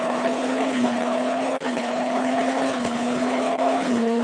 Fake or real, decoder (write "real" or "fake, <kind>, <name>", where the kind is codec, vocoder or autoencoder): fake, codec, HILCodec